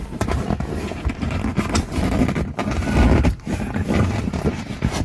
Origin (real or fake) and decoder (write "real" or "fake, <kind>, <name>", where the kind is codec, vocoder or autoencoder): real